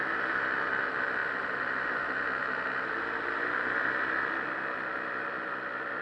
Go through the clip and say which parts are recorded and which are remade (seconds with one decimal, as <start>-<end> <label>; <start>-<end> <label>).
0.0-6.0 recorded